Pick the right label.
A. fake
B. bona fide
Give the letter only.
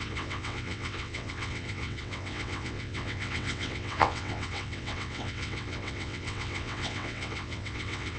A